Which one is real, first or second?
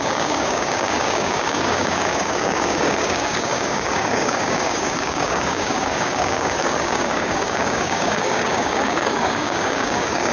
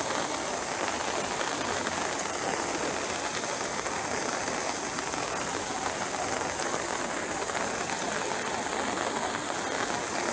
second